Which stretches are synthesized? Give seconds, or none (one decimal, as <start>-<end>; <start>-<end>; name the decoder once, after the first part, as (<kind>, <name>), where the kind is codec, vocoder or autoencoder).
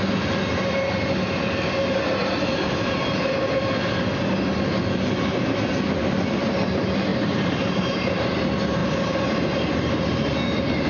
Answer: 7.1-8.3 (vocoder, BigVGAN v2)